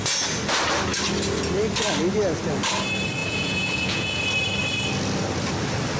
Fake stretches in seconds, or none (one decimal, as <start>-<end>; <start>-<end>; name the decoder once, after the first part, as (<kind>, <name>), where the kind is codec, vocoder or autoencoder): 3.2-4.2 (vocoder, Vocos)